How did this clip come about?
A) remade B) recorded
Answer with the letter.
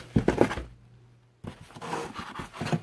B